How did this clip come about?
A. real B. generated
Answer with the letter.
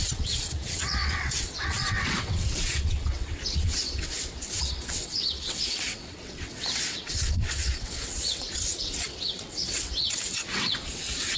B